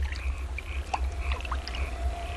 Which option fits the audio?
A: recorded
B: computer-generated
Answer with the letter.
B